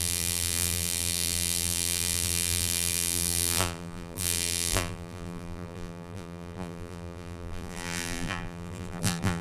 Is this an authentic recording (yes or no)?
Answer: no